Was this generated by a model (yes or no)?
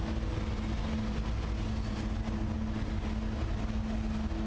no